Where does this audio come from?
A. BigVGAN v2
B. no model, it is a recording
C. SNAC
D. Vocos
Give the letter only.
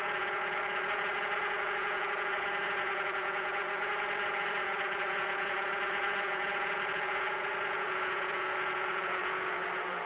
D